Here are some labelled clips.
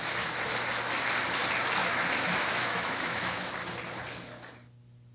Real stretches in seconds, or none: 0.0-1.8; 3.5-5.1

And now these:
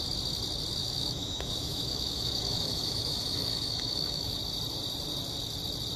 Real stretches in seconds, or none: 0.0-0.8; 4.4-6.0

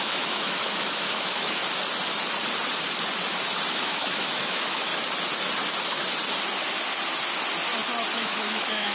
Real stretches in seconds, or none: 1.6-3.8; 4.9-8.2

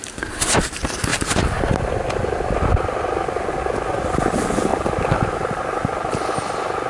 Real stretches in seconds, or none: 0.0-6.9

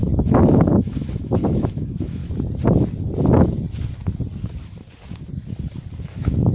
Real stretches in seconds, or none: 2.2-6.0

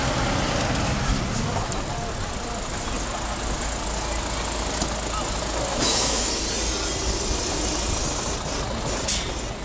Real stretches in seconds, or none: 0.0-5.7; 6.3-9.6

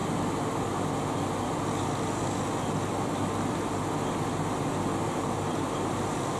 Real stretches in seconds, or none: 0.0-6.4

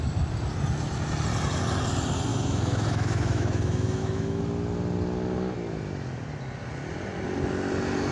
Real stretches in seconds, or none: 0.0-2.3; 4.4-8.1